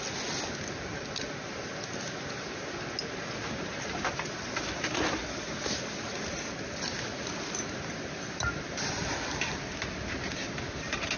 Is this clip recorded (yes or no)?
yes